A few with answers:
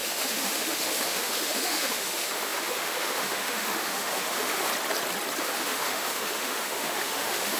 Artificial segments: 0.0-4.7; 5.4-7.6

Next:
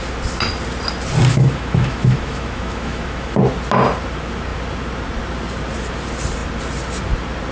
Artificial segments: 1.3-3.4